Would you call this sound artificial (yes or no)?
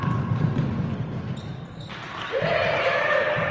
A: no